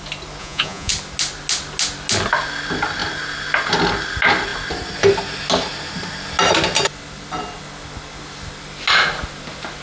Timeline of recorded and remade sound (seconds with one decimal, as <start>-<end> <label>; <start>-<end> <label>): 0.0-0.4 recorded; 0.4-0.9 remade; 0.9-9.8 recorded